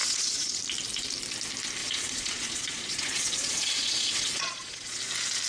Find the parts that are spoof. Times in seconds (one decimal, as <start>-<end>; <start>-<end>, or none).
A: 0.0-0.6; 1.8-5.1